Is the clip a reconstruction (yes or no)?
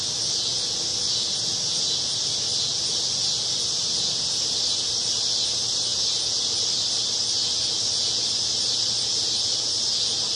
no